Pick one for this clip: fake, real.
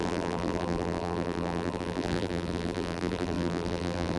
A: fake